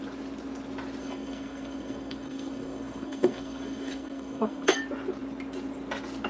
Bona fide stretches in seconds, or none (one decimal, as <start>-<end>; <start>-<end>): 0.0-1.0; 4.8-6.3